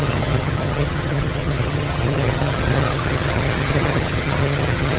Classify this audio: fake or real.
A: fake